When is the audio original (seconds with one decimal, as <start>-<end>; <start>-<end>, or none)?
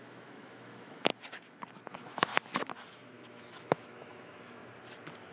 1.1-1.9; 2.3-2.9; 4.6-5.3